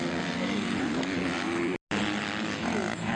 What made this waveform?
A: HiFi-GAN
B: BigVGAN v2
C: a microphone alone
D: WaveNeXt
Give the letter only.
C